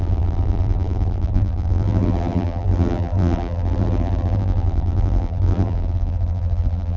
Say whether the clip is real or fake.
fake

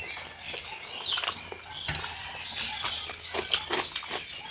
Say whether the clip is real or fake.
real